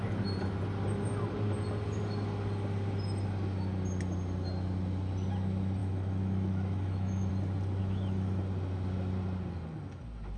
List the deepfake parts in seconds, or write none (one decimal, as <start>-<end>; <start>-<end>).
5.8-7.3; 7.8-8.4